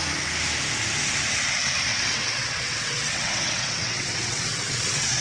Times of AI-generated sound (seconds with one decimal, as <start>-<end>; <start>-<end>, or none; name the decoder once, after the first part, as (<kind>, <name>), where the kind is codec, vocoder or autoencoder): 1.9-5.2 (vocoder, WaveNeXt)